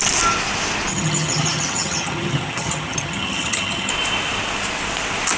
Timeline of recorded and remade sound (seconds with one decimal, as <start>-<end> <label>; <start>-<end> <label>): 0.0-0.9 recorded; 0.9-3.9 remade; 3.9-5.4 recorded